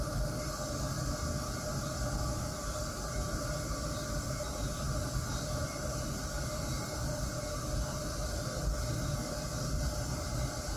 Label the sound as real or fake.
real